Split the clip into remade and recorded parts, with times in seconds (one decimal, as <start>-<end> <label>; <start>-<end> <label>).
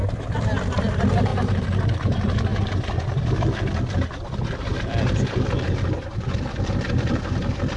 0.0-0.6 recorded; 0.6-1.3 remade; 1.3-2.0 recorded; 2.0-2.5 remade; 2.5-4.3 recorded; 4.3-7.8 remade